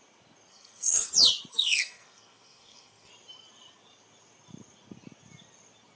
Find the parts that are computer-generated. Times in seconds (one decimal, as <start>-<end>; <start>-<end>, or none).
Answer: 0.5-1.1; 1.5-3.1